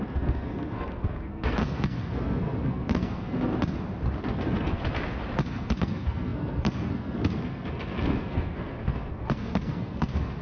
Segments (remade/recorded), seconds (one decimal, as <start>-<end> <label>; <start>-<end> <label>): 0.0-3.5 remade; 3.5-4.2 recorded; 4.2-4.8 remade; 4.8-5.5 recorded; 5.5-10.4 remade